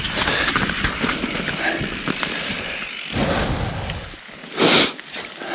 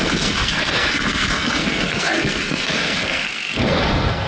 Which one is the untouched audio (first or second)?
first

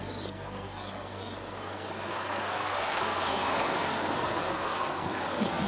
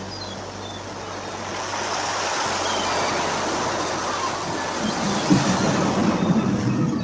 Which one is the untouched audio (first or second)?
second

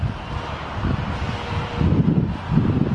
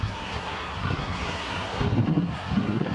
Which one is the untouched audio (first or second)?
first